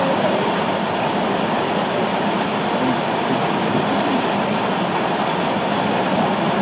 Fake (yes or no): no